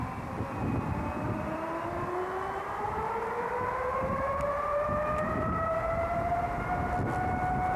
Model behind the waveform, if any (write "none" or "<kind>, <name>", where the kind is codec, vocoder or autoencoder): none